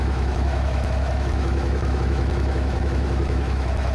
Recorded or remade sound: remade